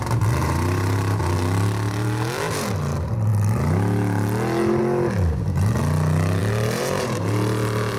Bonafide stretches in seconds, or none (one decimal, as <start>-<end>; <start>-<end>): 0.0-0.4; 1.2-6.4